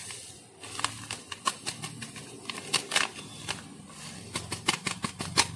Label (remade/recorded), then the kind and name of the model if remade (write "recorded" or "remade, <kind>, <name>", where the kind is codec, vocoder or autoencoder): recorded